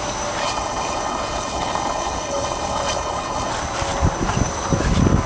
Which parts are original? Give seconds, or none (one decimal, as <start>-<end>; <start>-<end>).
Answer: 0.0-0.4; 3.5-5.3